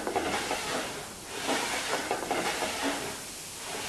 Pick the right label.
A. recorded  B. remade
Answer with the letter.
A